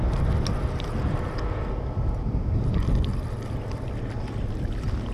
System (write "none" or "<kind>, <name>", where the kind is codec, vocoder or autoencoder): none